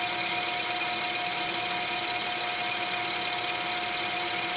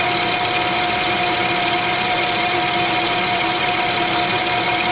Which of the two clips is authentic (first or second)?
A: first